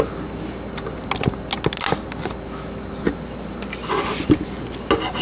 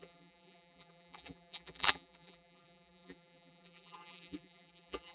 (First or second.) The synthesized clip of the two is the second